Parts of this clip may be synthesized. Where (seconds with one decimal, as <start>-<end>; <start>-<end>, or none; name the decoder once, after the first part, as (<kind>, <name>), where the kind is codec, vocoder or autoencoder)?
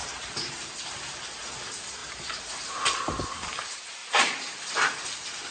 0.0-0.7 (vocoder, BigVGAN v2); 2.0-2.6; 4.0-4.7